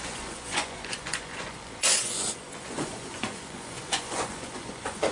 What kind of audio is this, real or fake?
fake